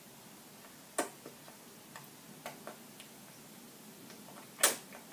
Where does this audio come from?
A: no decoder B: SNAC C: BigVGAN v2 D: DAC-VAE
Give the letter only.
A